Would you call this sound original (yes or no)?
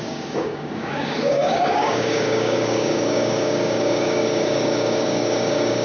no